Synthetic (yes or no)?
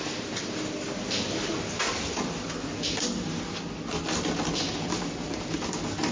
no